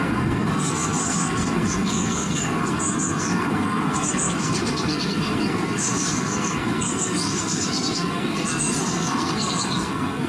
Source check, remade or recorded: remade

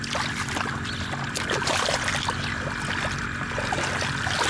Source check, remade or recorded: recorded